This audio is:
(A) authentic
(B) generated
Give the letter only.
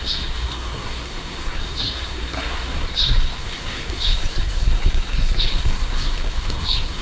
B